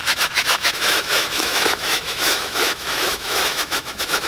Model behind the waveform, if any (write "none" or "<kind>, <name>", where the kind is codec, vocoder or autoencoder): autoencoder, DAC-VAE